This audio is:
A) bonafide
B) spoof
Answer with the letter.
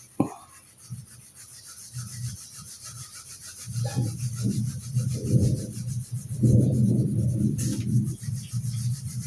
A